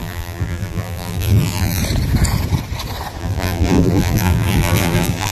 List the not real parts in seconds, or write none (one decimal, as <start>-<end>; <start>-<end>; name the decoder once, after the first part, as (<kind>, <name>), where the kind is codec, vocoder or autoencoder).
0.0-1.8 (vocoder, BigVGAN v2); 3.2-5.3